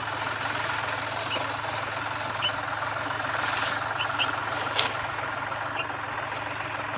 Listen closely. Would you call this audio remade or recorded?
recorded